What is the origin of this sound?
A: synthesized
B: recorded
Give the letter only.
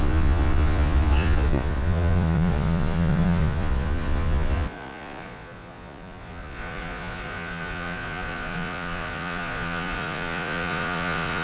A